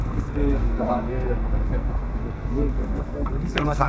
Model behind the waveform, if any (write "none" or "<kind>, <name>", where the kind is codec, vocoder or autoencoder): codec, SNAC